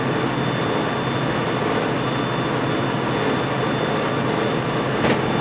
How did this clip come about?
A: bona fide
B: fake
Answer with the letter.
A